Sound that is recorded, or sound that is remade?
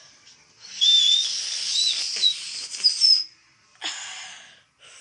recorded